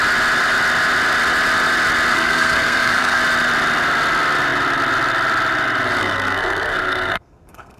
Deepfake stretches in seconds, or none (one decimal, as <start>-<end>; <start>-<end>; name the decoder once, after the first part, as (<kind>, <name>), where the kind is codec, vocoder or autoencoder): 2.1-3.2 (codec, SNAC); 6.0-7.8